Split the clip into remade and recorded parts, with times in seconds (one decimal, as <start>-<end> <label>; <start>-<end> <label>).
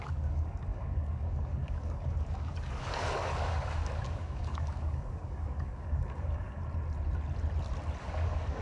0.0-6.6 remade; 6.6-8.0 recorded; 8.0-8.6 remade